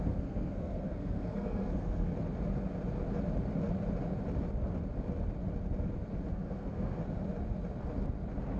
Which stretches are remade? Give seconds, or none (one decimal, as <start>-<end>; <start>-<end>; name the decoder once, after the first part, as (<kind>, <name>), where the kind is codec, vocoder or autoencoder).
0.0-2.1 (codec, SNAC); 6.3-7.0